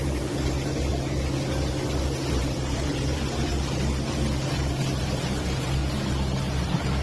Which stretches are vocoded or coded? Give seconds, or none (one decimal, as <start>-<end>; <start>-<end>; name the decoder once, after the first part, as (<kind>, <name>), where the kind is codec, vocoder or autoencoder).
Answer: 0.0-0.9 (vocoder, BigVGAN v2); 2.3-3.5; 5.0-5.8; 6.6-7.0